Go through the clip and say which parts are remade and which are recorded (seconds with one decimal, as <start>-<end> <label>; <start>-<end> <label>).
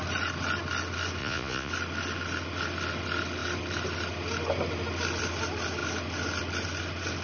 0.0-1.2 recorded; 1.2-1.7 remade; 1.7-7.2 recorded